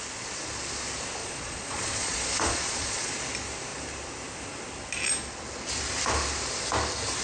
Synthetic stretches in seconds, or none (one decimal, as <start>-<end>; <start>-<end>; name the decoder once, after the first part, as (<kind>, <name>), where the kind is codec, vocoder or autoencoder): 1.2-3.1 (vocoder, Vocos)